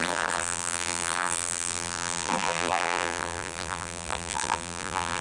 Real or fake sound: fake